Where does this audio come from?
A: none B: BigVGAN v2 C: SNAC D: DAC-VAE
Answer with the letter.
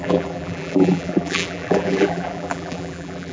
B